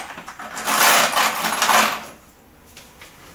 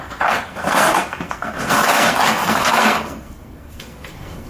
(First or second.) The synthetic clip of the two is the second